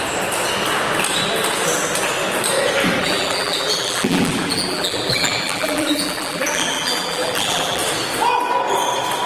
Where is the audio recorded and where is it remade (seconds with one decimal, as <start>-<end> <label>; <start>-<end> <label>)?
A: 0.0-3.0 recorded; 3.0-7.8 remade; 7.8-9.3 recorded